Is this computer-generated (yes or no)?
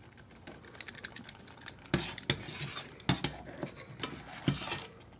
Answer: no